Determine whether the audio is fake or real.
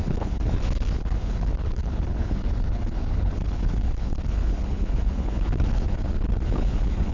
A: fake